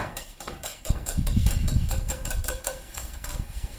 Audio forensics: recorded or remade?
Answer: remade